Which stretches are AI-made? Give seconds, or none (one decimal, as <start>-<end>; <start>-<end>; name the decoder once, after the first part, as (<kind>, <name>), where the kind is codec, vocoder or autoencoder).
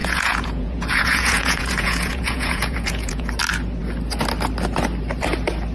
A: 0.0-3.4 (vocoder, Vocos)